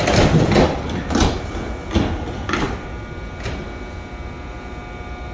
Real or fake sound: real